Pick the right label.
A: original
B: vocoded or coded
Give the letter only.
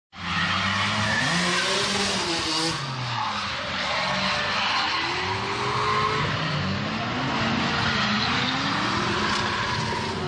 A